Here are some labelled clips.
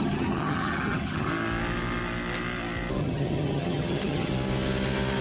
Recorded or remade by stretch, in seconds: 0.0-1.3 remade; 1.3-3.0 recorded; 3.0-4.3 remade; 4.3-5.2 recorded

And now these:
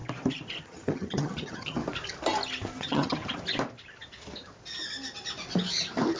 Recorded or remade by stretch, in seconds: 0.0-0.6 recorded; 0.6-1.8 remade; 1.8-2.8 recorded; 2.8-3.2 remade; 3.2-6.2 recorded